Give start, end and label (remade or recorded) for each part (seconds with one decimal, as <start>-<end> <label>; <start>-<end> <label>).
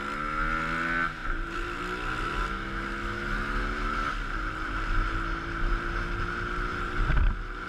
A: 0.0-1.2 recorded; 1.2-1.8 remade; 1.8-6.7 recorded; 6.7-7.3 remade; 7.3-7.7 recorded